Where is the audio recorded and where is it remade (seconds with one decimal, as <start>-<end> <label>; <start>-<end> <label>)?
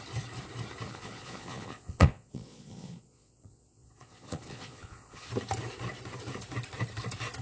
0.0-0.9 recorded; 0.9-5.3 remade; 5.3-7.4 recorded